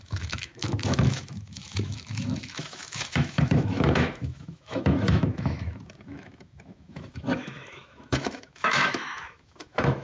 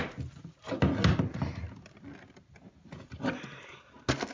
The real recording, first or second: second